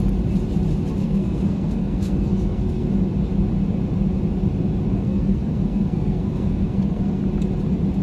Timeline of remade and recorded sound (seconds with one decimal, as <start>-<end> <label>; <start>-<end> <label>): 0.0-1.0 recorded; 1.0-2.9 remade; 2.9-4.9 recorded; 4.9-7.2 remade; 7.2-8.0 recorded